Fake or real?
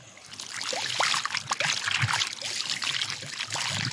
real